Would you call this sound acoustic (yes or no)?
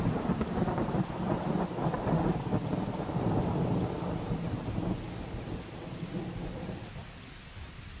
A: yes